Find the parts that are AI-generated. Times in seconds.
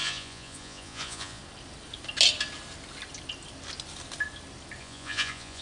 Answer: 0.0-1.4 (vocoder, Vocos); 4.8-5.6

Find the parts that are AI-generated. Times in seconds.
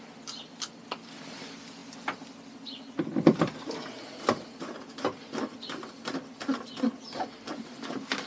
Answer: none